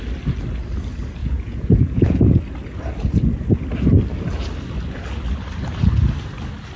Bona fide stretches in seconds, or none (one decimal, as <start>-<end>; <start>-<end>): 0.0-1.2; 2.4-6.8